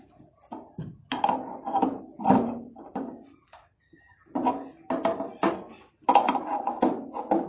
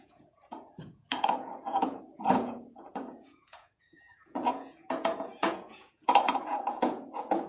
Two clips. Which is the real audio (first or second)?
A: first